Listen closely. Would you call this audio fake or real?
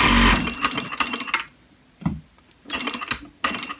real